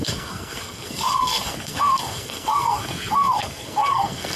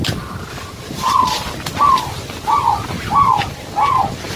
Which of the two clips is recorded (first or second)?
second